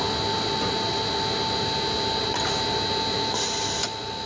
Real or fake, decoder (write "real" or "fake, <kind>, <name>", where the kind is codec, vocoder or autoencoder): real